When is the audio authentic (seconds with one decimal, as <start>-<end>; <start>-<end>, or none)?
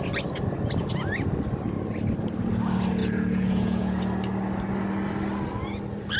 0.0-3.0; 4.0-6.2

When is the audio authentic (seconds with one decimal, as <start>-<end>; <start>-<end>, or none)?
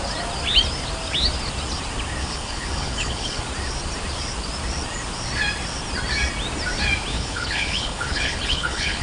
0.0-2.2; 3.4-7.1